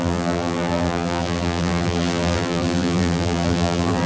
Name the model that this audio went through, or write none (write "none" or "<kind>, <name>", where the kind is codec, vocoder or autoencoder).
vocoder, BigVGAN v2